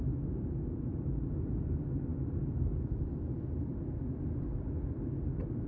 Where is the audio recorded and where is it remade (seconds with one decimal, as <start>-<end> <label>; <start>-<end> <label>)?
0.0-2.1 recorded; 2.1-3.8 remade; 3.8-5.7 recorded